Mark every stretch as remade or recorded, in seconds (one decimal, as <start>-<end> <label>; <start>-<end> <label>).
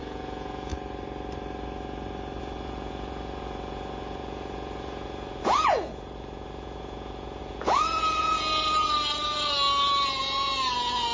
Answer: 0.0-0.7 remade; 0.7-2.4 recorded; 2.4-11.1 remade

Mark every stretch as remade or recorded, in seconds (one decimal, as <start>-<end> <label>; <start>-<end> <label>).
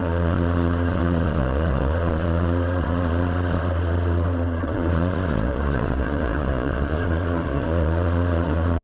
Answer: 0.0-8.8 remade